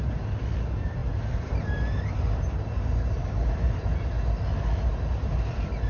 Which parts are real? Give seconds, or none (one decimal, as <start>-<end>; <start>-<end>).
0.0-5.9